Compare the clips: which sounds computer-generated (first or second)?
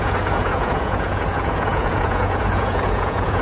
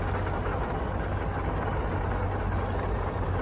first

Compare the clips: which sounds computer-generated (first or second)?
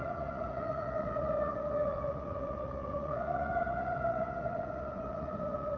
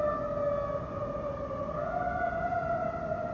first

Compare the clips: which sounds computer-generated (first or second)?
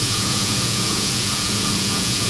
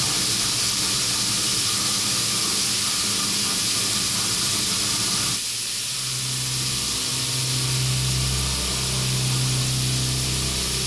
first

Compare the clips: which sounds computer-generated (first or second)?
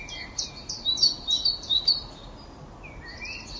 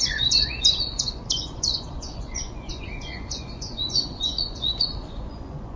second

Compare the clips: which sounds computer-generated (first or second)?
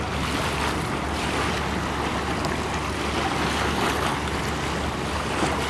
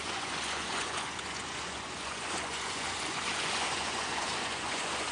second